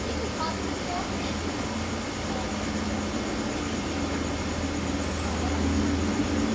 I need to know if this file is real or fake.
real